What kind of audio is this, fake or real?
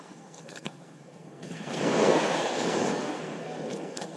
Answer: fake